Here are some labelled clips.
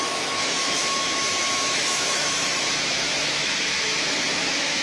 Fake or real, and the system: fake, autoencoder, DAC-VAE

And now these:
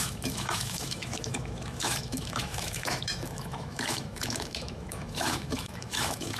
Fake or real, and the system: fake, autoencoder, DAC-VAE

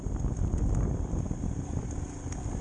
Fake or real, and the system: real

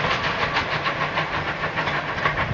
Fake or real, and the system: real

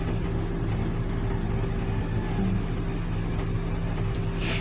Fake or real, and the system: real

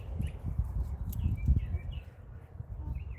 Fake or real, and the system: real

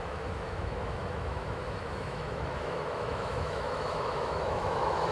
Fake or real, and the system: fake, autoencoder, DAC-VAE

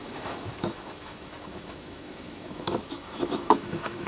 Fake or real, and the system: fake, autoencoder, DAC-VAE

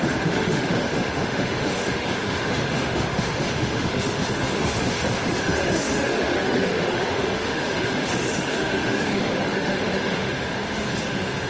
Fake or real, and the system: fake, autoencoder, DAC-VAE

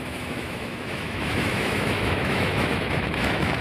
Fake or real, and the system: fake, autoencoder, DAC-VAE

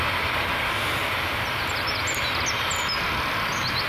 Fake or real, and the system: real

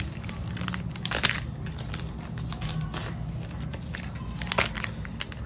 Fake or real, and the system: real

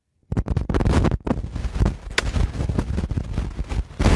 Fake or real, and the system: real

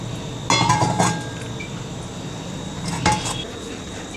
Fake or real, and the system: real